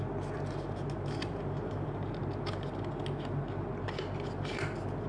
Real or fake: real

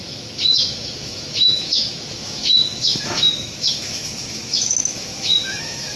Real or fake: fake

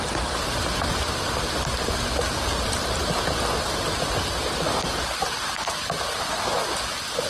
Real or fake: real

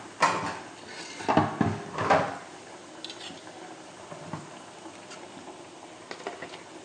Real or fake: real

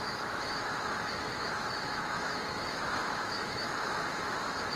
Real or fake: fake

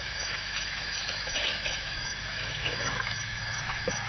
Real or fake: fake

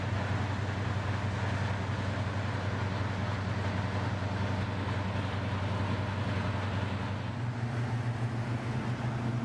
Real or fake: real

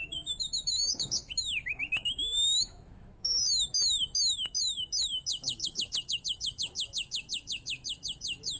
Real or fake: fake